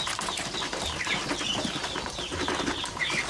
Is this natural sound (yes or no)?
yes